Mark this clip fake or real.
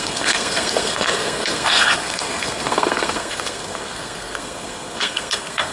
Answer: fake